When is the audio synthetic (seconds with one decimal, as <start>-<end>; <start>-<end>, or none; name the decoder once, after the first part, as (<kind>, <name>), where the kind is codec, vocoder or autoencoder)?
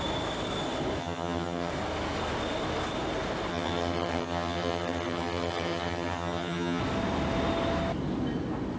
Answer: 1.0-1.7 (vocoder, HiFi-GAN); 3.5-6.8